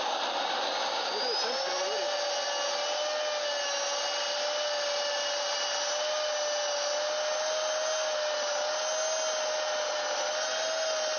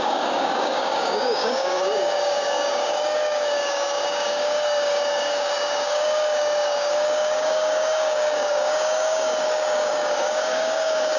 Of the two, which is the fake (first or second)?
second